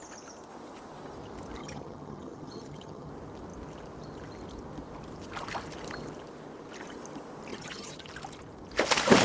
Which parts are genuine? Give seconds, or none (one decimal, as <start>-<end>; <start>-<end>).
0.0-1.6; 3.1-7.5; 8.1-9.2